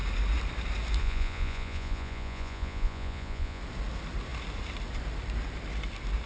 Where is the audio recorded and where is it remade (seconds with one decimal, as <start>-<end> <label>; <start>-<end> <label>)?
0.0-1.0 recorded; 1.0-3.6 remade; 3.6-6.3 recorded